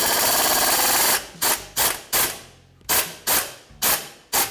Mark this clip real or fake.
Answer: real